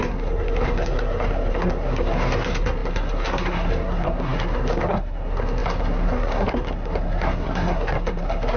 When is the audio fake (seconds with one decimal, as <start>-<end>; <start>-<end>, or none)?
0.0-8.6